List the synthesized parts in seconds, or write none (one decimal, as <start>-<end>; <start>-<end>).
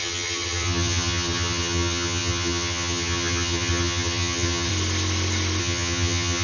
0.0-4.7; 5.6-6.4